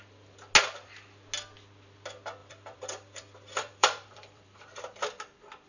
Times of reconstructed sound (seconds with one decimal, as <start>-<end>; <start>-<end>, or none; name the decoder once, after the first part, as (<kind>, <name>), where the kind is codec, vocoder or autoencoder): 2.4-4.8 (vocoder, BigVGAN v2)